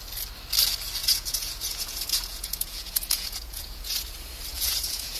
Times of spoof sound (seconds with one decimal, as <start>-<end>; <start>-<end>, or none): 1.0-4.1; 4.5-5.2